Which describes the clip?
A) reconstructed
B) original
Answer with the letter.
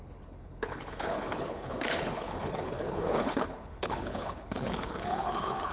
A